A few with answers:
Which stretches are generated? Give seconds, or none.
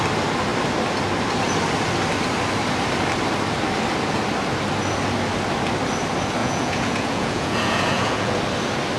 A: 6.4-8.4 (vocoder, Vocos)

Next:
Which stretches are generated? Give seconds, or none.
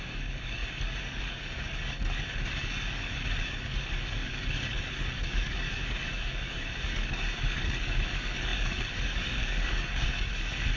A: 0.0-10.8 (codec, DAC)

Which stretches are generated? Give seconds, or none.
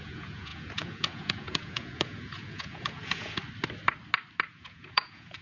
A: 0.0-3.4 (vocoder, Vocos); 4.5-5.4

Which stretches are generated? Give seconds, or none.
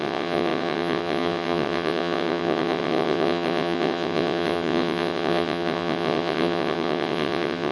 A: 0.0-7.7 (vocoder, WaveNeXt)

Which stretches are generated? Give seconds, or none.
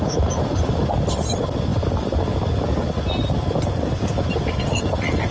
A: none